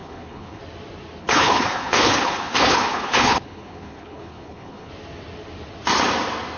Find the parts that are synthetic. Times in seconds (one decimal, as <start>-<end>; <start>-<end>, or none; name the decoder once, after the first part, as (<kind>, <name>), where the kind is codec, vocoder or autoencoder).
0.0-0.6 (codec, HILCodec); 1.2-4.9